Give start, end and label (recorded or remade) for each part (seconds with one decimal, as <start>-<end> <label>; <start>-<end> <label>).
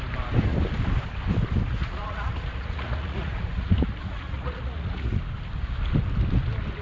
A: 0.0-1.7 recorded; 1.7-5.1 remade; 5.1-6.8 recorded